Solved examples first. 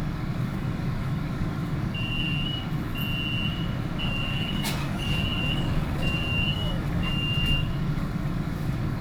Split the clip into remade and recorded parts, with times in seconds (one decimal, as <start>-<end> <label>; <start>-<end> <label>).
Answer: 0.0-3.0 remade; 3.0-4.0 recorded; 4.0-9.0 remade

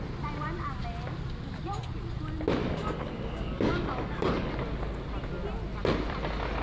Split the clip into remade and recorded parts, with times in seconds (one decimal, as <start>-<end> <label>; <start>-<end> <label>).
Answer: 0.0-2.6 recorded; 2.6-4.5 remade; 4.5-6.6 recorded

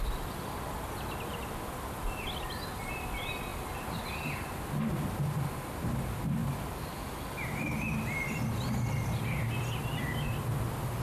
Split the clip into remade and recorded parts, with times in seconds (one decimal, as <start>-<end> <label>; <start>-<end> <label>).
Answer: 0.0-11.0 recorded